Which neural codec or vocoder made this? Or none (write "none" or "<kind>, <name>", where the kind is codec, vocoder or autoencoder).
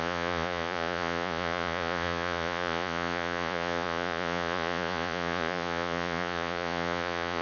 vocoder, Vocos